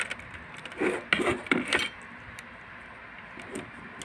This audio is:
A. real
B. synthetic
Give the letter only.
A